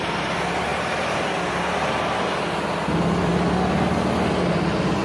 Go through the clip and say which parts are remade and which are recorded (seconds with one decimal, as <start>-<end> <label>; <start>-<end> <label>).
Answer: 0.0-5.0 recorded